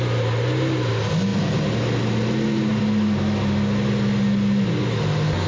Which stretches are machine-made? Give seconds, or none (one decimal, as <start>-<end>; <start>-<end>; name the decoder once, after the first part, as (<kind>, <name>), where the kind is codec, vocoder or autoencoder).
none